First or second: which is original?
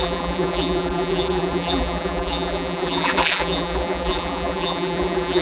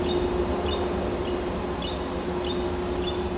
second